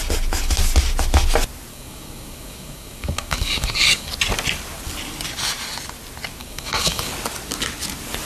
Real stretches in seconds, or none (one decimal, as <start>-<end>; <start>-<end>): 0.0-1.7; 4.1-6.4; 7.1-8.3